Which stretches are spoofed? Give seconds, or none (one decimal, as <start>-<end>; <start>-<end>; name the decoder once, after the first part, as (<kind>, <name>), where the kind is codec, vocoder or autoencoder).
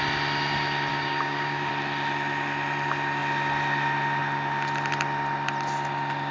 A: 0.9-1.7 (codec, DAC)